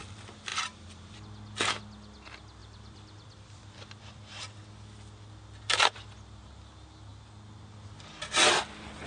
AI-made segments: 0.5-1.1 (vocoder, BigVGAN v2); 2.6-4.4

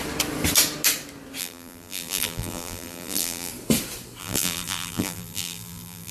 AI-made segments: 1.4-3.5 (vocoder, BigVGAN v2); 4.2-6.1

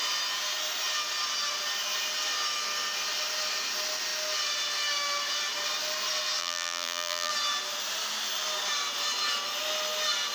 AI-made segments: 6.4-7.3 (vocoder, BigVGAN v2)

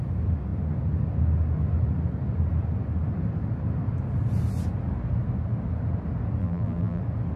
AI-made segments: 6.4-7.0 (vocoder, BigVGAN v2)

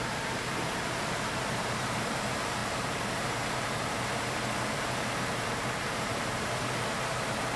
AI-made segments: 0.0-7.6 (vocoder, BigVGAN v2)